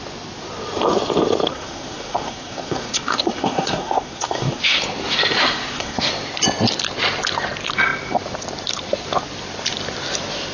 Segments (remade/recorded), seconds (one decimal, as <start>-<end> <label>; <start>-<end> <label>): 0.0-1.5 recorded; 1.5-4.8 remade; 4.8-5.4 recorded; 5.4-6.1 remade; 6.1-10.5 recorded